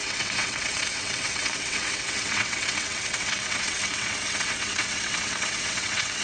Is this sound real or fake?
fake